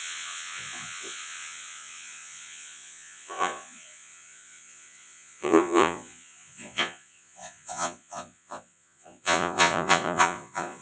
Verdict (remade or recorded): remade